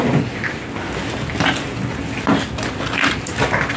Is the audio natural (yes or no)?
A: yes